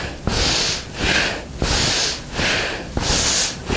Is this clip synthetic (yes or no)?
no